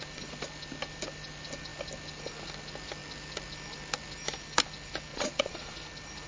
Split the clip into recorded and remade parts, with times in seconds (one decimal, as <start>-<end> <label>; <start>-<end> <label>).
0.0-5.1 recorded; 5.1-5.7 remade; 5.7-6.3 recorded